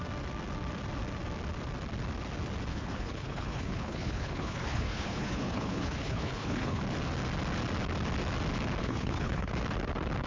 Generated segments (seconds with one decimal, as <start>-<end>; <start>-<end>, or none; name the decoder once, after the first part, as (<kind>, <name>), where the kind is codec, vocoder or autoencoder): 2.7-6.8 (codec, HILCodec); 8.8-9.5